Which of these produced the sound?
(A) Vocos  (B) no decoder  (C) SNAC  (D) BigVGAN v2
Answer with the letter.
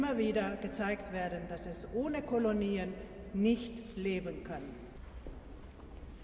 B